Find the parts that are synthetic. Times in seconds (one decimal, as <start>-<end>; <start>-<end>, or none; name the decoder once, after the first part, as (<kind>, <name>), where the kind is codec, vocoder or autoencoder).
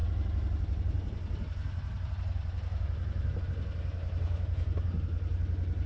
none